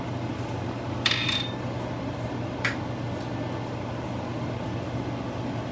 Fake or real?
real